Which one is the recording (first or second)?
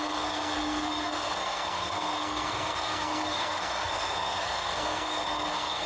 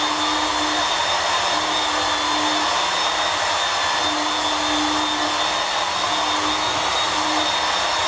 second